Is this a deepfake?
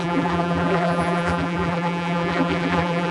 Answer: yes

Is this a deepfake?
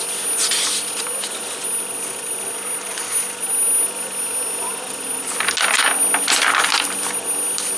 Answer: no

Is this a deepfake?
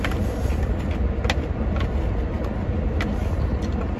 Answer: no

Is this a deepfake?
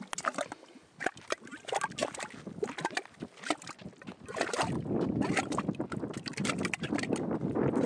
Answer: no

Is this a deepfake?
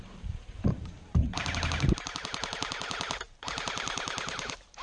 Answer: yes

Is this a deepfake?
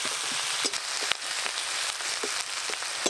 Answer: no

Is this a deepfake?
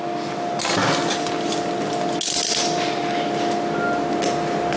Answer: no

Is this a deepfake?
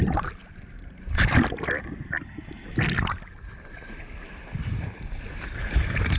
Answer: no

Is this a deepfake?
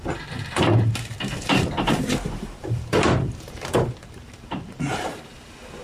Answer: yes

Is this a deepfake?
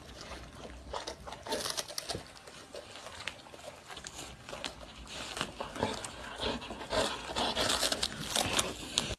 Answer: no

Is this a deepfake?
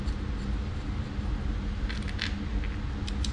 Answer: no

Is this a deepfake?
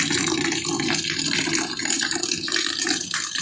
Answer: yes